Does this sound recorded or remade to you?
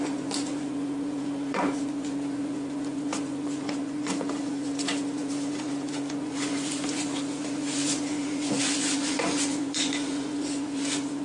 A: remade